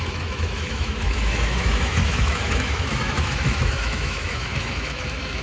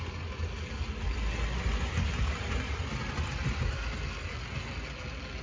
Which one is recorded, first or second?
second